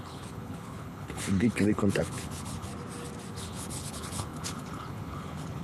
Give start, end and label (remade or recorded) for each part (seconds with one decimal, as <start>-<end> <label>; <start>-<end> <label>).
0.0-2.7 remade; 2.7-3.3 recorded; 3.3-5.6 remade